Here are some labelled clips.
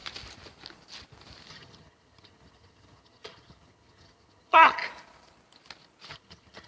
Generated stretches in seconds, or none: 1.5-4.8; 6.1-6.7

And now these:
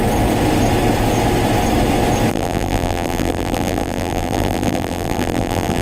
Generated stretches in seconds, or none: 2.3-5.8

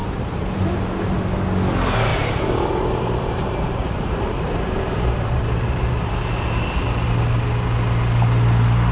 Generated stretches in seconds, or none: 0.0-1.1; 2.1-6.1

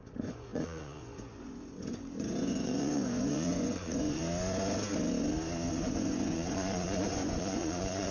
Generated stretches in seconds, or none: 0.0-4.2; 5.7-8.1

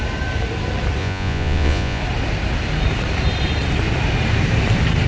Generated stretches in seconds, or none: 1.0-2.0